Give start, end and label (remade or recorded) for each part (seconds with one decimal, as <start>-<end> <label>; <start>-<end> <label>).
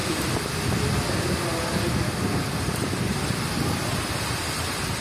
0.0-3.0 recorded; 3.0-5.0 remade